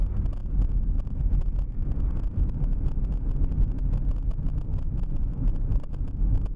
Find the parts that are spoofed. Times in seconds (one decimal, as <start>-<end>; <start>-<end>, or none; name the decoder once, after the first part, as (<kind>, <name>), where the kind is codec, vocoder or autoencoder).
4.7-5.8 (vocoder, BigVGAN v2)

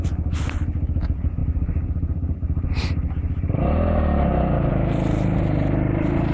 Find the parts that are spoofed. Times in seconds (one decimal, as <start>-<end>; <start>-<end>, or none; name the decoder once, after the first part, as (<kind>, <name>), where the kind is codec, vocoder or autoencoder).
none

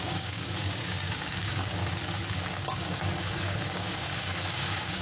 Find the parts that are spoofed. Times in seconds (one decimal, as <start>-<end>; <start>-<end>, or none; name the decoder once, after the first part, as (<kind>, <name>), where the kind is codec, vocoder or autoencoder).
0.0-1.8 (codec, DAC); 2.3-5.0

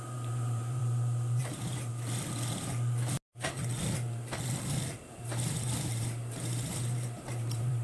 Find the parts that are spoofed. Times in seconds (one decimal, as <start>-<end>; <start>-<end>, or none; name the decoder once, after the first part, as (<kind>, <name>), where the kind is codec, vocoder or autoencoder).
0.0-0.8 (vocoder, BigVGAN v2); 1.4-1.9; 5.1-7.8